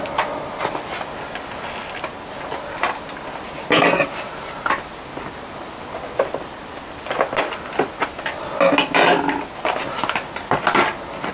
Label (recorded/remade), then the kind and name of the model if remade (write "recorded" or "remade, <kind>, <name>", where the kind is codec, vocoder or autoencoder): recorded